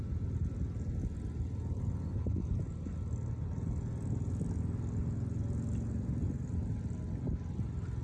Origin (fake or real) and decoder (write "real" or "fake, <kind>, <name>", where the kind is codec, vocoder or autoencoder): real